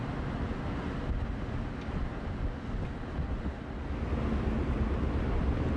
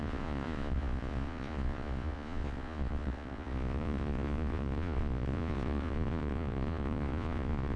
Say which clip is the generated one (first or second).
second